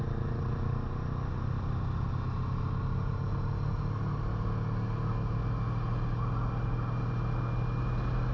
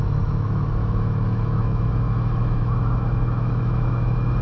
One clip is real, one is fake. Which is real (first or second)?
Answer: first